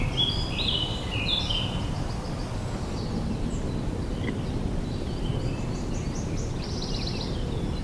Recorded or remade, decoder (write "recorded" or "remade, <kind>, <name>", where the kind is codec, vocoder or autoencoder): recorded